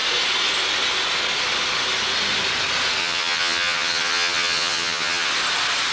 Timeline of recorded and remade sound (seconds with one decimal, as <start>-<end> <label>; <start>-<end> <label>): 0.0-3.0 recorded; 3.0-5.3 remade; 5.3-5.9 recorded